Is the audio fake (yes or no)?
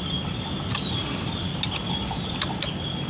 no